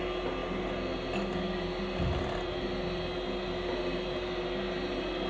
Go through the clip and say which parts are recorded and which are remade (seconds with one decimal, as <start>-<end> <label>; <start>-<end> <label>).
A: 0.0-5.3 recorded